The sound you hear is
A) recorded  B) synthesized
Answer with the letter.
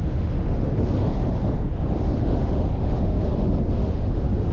B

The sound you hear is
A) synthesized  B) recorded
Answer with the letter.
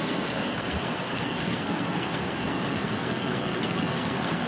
A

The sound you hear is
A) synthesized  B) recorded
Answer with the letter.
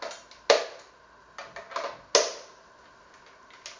B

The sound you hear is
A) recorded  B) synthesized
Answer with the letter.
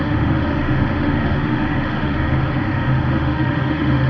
B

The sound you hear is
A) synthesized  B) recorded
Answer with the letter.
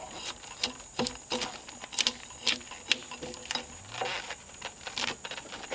B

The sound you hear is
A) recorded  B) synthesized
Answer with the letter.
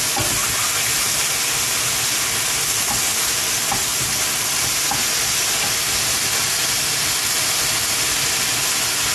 A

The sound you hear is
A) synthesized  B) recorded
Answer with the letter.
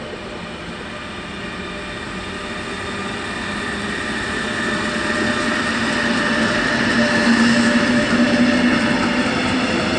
B